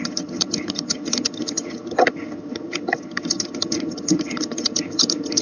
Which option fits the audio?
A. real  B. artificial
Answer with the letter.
B